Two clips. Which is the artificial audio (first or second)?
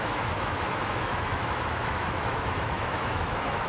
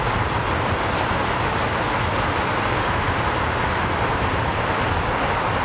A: first